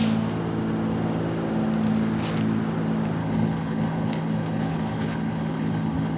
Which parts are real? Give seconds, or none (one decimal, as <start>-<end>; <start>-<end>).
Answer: 0.0-3.2